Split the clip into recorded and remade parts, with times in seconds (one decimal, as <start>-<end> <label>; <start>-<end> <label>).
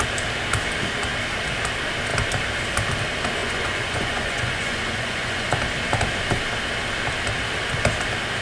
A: 0.0-3.4 recorded; 3.4-5.5 remade; 5.5-8.4 recorded